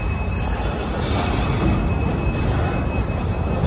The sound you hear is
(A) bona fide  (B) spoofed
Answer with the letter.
A